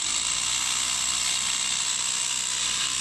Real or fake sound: real